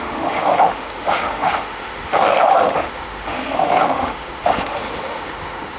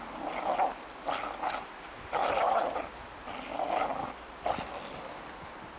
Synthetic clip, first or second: first